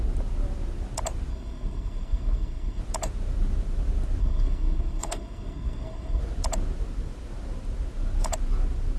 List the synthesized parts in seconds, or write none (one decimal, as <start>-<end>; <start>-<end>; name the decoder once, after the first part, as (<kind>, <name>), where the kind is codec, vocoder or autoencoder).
1.3-2.8 (codec, SNAC); 4.2-6.2